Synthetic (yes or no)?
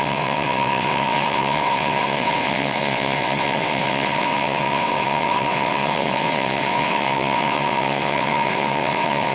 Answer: yes